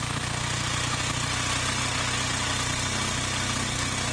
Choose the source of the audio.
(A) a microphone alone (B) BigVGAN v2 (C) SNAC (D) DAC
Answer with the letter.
A